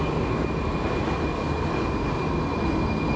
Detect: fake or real real